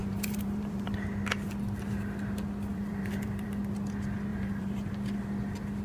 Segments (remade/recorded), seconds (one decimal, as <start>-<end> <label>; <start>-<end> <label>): 0.0-0.9 remade; 0.9-2.7 recorded; 2.7-3.6 remade; 3.6-4.3 recorded; 4.3-4.9 remade; 4.9-5.8 recorded